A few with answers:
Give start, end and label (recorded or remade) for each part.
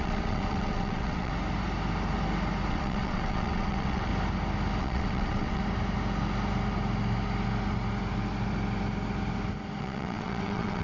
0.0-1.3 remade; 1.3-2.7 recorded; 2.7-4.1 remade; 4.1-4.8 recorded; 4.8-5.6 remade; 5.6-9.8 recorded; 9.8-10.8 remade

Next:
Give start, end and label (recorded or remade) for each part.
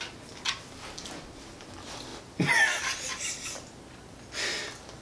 0.0-5.0 recorded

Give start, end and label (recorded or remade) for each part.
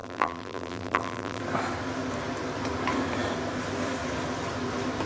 0.0-1.4 remade; 1.4-5.1 recorded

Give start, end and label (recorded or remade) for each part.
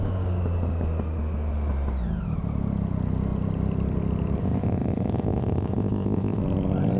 0.0-4.4 recorded; 4.4-6.4 remade; 6.4-7.0 recorded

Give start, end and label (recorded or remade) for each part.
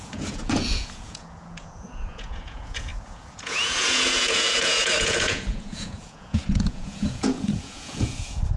0.0-8.6 remade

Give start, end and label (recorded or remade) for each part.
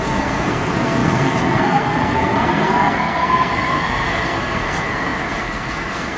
0.0-6.2 remade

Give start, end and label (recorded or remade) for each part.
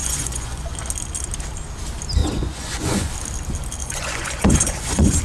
0.0-0.6 remade; 0.6-2.2 recorded; 2.2-3.1 remade; 3.1-3.8 recorded; 3.8-5.2 remade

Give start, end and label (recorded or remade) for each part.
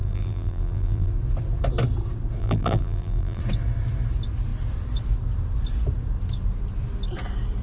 0.0-1.1 remade; 1.1-2.4 recorded; 2.4-3.4 remade; 3.4-7.6 recorded